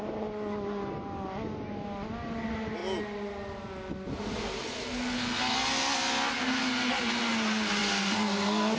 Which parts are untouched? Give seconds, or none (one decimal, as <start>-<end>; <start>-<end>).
0.0-8.8